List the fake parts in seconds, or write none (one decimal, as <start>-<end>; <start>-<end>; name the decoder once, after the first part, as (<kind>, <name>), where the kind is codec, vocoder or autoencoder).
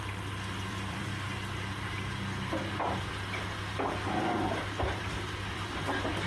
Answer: 0.0-1.1 (vocoder, BigVGAN v2); 4.2-6.3